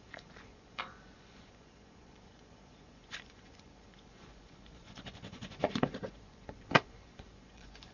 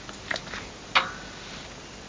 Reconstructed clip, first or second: first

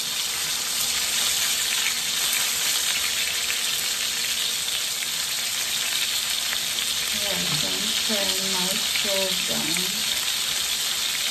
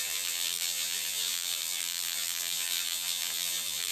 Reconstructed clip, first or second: second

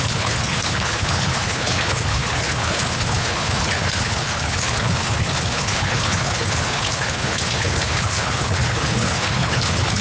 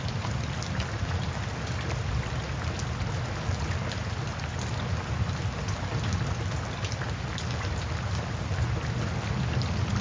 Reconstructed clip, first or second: first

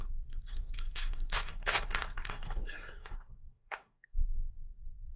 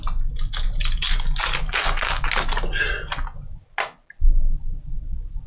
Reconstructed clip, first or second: first